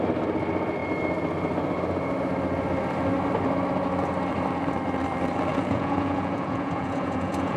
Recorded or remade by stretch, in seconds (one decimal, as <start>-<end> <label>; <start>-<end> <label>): 0.0-5.5 recorded; 5.5-7.6 remade